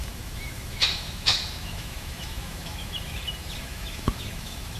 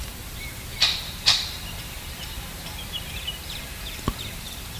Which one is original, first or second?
second